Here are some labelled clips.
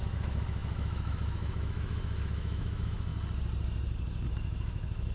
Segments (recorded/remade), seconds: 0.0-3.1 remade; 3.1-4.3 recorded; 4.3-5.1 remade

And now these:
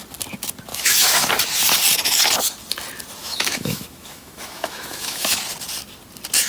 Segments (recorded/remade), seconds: 0.0-0.7 recorded; 0.7-1.3 remade; 1.3-3.2 recorded; 3.2-5.4 remade; 5.4-6.5 recorded

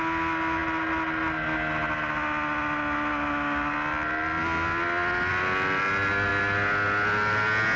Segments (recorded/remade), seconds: 0.0-7.8 recorded

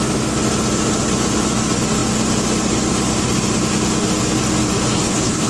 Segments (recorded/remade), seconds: 0.0-4.9 recorded; 4.9-5.5 remade